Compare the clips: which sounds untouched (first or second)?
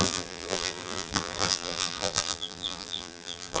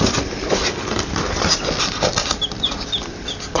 second